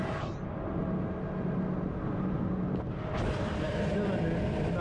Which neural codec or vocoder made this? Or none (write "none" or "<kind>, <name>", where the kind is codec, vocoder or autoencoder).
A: none